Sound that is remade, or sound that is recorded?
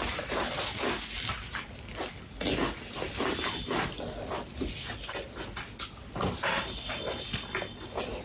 recorded